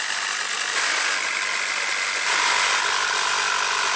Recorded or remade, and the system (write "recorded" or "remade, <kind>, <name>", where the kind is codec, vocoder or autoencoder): recorded